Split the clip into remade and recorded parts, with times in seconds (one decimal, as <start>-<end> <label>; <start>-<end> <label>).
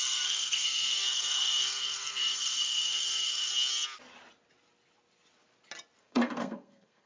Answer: 0.0-3.5 remade; 3.5-6.0 recorded; 6.0-7.1 remade